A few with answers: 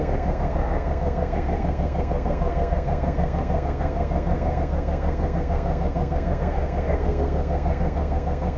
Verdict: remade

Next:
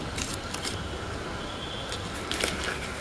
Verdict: recorded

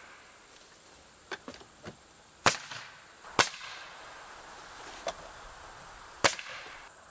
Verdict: recorded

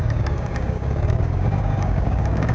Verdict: remade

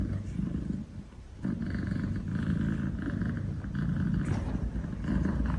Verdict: recorded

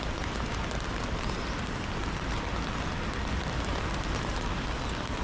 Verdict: recorded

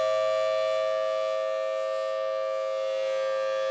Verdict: recorded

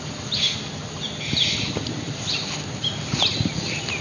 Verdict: recorded